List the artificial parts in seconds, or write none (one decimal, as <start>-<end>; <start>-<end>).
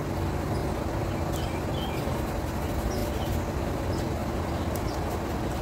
none